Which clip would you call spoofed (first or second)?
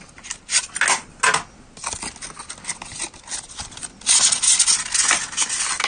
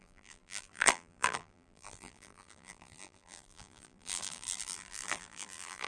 second